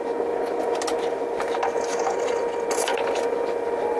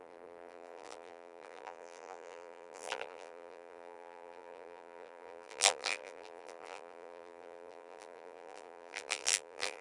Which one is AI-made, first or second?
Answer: second